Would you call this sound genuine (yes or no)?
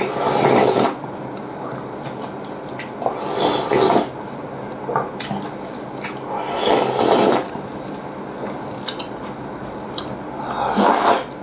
yes